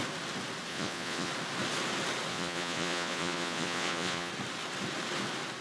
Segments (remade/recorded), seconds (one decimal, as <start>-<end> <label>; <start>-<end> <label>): 0.0-0.7 recorded; 0.7-1.3 remade; 1.3-2.3 recorded; 2.3-4.3 remade; 4.3-5.6 recorded